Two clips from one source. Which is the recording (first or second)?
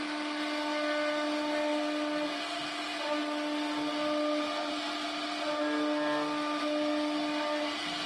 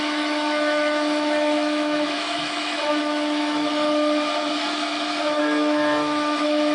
first